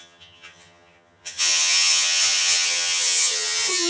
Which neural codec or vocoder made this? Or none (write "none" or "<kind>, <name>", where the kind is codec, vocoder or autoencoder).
vocoder, HiFi-GAN